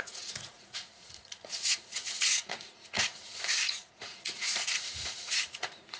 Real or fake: fake